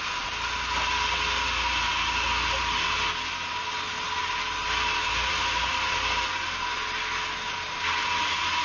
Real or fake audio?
real